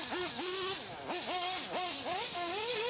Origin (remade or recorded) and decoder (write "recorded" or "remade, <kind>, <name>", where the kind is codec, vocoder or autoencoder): recorded